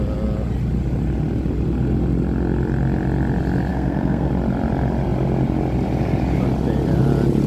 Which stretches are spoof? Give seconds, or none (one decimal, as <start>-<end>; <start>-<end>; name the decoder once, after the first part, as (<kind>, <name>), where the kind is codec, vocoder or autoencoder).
3.7-4.3 (codec, SNAC)